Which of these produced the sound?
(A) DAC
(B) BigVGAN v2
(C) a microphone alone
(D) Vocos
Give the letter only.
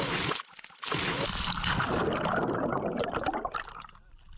C